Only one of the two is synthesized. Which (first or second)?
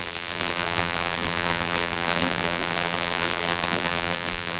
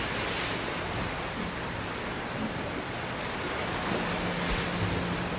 first